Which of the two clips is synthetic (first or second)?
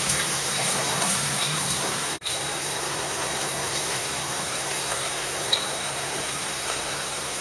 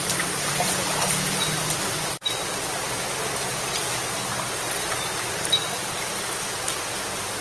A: first